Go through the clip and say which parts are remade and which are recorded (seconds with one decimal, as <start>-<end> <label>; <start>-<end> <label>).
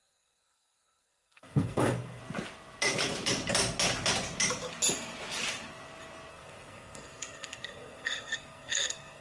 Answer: 0.0-2.2 remade; 2.2-6.3 recorded; 6.3-9.2 remade